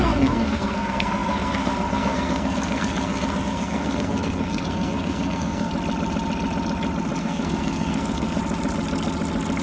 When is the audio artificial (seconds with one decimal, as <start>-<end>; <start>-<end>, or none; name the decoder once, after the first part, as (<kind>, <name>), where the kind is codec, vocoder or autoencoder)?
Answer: 0.0-5.7 (codec, SNAC); 7.2-8.4